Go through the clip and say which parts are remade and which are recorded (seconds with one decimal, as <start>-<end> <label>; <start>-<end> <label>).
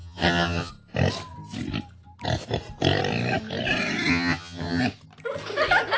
0.0-0.7 remade; 0.7-4.1 recorded; 4.1-4.8 remade; 4.8-6.0 recorded